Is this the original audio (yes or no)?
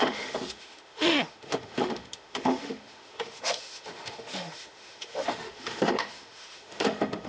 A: no